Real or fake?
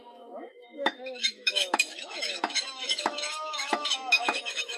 fake